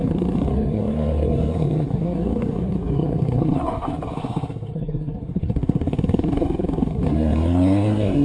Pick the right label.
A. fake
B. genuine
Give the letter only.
A